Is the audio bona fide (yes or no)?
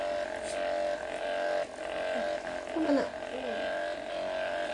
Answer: yes